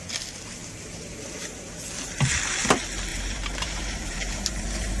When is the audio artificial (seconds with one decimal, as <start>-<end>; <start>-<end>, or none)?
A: 3.1-5.0

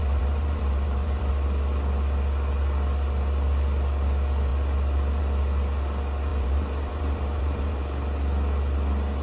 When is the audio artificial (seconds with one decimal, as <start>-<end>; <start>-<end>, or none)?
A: 0.0-1.3; 6.3-7.8

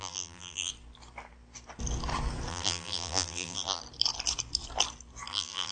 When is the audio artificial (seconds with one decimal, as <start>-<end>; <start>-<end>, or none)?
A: 0.0-0.7; 2.5-3.8; 5.3-5.7